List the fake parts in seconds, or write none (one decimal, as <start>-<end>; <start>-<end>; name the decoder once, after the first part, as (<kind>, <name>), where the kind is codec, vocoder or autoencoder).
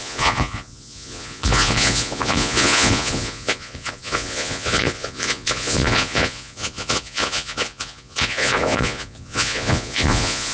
0.0-10.5 (vocoder, Vocos)